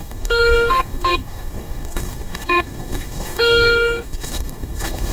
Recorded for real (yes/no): no